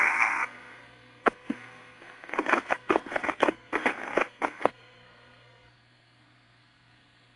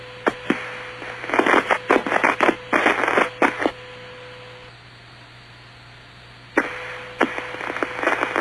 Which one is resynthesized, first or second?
first